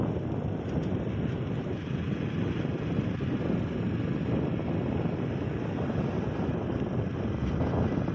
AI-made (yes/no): no